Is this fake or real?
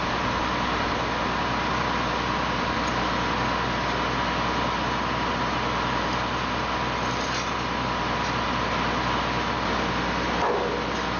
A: real